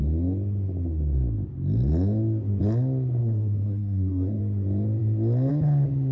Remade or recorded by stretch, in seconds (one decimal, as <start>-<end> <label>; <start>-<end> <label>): 0.0-3.2 recorded; 3.2-4.4 remade; 4.4-6.1 recorded